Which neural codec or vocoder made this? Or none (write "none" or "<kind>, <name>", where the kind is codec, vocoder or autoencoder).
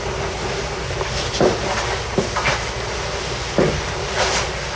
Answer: none